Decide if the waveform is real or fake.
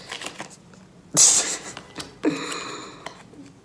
real